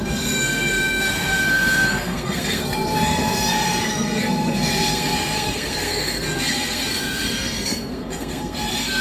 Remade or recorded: remade